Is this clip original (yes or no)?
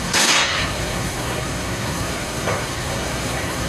no